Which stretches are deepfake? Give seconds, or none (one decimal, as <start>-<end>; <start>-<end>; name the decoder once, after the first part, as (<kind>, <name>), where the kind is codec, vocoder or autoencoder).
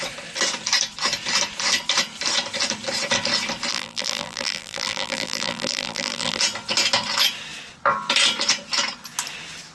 3.7-6.4 (vocoder, BigVGAN v2)